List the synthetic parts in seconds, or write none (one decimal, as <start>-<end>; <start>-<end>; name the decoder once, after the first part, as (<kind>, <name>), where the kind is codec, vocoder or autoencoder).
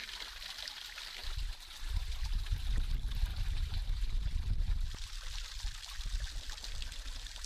0.0-0.6 (vocoder, BigVGAN v2); 1.2-4.7